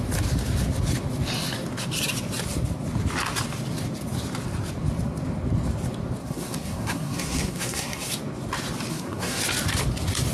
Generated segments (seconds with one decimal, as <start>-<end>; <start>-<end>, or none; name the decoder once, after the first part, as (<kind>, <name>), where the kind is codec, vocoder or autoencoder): 6.2-8.1 (codec, SNAC); 8.9-9.4